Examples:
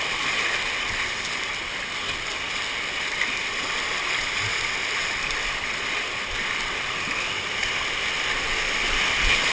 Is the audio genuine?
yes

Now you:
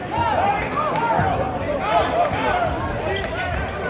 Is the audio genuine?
yes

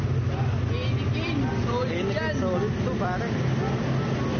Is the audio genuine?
yes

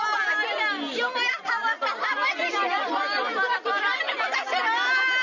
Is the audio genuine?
yes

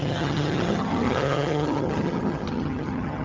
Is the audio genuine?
no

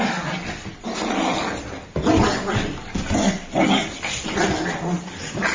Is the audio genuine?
yes